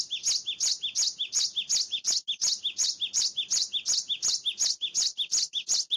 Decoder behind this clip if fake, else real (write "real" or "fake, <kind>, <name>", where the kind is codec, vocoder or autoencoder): real